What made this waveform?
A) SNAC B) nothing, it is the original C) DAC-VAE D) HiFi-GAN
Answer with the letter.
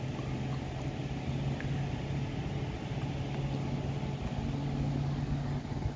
B